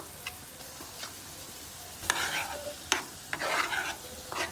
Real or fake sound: real